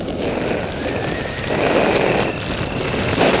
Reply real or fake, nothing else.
real